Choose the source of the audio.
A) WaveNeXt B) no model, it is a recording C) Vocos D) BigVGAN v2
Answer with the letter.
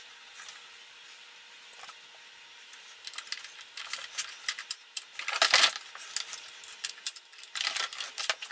B